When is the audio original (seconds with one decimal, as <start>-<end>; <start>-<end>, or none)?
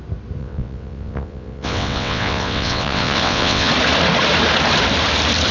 0.0-0.4; 3.7-5.5